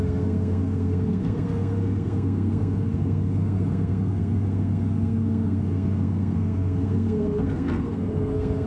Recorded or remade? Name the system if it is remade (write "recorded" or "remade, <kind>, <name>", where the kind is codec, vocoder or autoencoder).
remade, codec, SNAC